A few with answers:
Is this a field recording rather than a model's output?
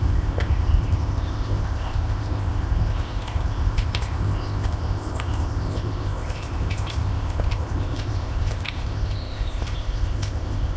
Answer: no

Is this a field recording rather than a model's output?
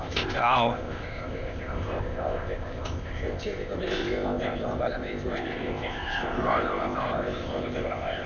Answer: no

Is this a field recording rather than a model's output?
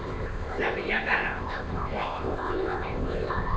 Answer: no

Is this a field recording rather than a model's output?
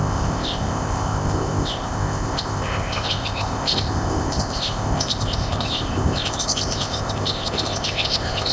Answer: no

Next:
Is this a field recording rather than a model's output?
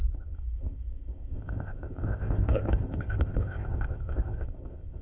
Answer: no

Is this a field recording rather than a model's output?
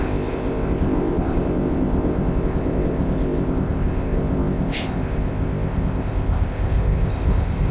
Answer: no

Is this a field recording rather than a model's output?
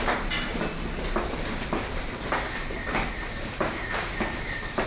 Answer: yes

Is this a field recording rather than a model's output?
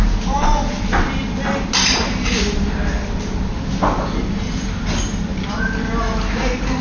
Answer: yes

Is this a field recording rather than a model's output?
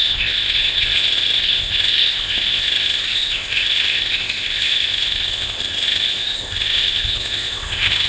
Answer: no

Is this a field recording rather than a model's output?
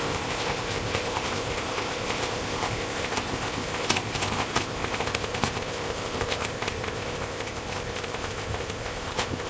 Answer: no